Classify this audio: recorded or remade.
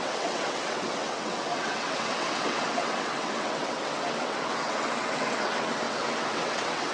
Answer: remade